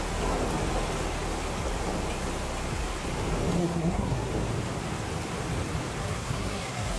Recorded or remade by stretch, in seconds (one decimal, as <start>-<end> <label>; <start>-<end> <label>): 0.0-3.6 recorded; 3.6-4.3 remade; 4.3-6.0 recorded; 6.0-7.0 remade